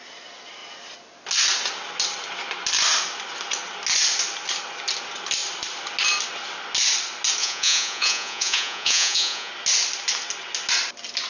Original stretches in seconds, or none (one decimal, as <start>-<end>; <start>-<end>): 0.0-7.4; 9.5-11.3